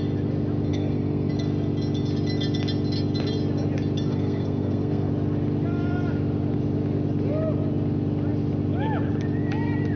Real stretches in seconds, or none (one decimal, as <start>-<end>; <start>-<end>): 0.0-0.7; 1.3-4.1; 5.1-10.0